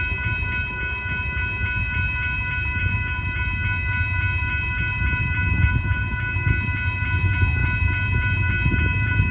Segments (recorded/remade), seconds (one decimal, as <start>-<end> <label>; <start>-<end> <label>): 0.0-9.3 recorded